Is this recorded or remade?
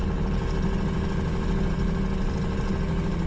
recorded